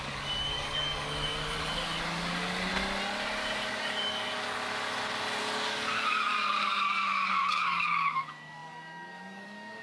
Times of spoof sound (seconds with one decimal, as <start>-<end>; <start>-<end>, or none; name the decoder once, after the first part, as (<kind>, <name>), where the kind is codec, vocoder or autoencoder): 0.0-2.7 (codec, DAC); 3.7-4.6; 5.4-9.8